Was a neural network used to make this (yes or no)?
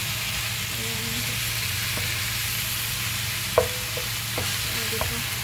no